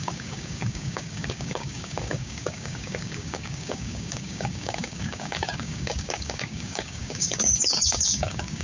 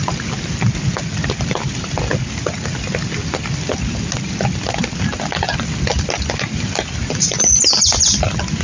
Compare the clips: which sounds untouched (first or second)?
second